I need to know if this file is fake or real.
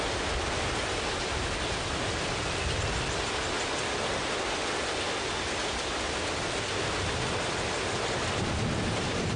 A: real